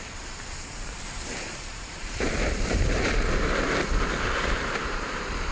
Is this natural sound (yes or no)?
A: no